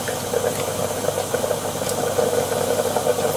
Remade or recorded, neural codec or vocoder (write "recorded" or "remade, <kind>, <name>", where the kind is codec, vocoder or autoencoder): recorded